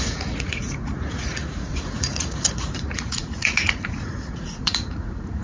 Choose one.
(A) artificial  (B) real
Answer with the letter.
A